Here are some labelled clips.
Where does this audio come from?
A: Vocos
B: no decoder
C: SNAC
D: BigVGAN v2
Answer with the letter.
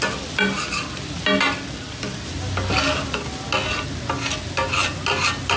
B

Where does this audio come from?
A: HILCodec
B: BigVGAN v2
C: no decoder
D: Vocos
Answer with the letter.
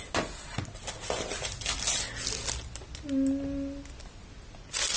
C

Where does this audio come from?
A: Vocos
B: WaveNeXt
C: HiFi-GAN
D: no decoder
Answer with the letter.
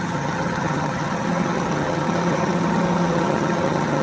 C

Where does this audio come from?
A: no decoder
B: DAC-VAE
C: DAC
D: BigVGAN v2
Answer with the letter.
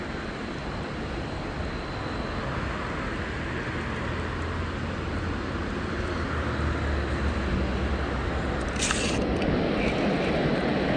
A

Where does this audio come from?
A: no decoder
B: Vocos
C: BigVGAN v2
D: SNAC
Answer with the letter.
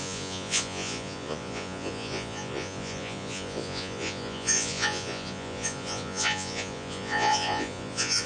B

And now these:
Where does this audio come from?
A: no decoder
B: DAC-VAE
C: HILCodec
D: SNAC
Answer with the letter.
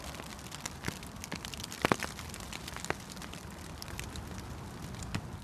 A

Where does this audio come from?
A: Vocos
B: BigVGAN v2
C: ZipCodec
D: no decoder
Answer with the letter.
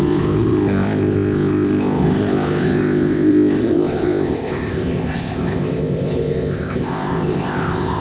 C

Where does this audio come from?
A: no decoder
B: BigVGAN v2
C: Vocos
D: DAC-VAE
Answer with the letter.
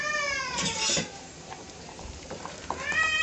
B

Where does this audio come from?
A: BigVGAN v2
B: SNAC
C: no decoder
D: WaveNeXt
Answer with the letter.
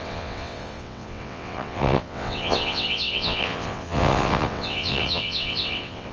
D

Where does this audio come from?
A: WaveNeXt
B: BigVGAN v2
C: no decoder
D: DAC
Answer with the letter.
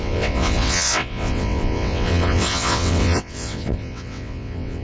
A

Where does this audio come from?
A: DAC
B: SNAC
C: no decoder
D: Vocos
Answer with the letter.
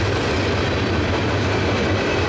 C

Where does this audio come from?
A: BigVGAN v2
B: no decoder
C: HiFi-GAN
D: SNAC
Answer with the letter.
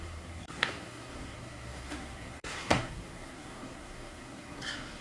D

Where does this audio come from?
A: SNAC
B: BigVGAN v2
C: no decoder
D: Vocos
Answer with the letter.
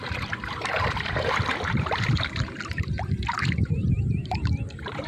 B